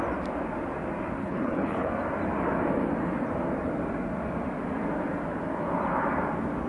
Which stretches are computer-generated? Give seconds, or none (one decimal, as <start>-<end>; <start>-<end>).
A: 1.2-1.9